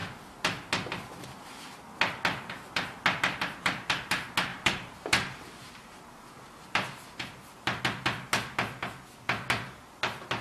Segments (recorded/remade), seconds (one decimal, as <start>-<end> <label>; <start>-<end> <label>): 0.0-4.5 recorded; 4.5-7.8 remade; 7.8-10.4 recorded